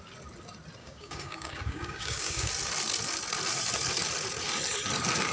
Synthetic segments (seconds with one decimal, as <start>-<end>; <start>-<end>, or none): 0.8-2.5